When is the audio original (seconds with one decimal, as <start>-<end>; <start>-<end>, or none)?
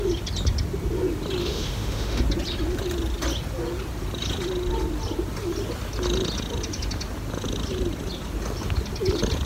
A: 0.0-1.4; 2.2-9.5